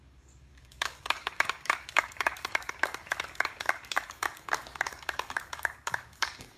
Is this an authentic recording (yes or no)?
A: no